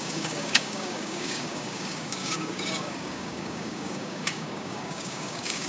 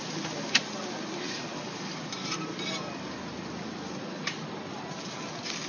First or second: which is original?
second